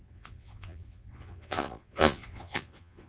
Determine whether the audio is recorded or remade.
remade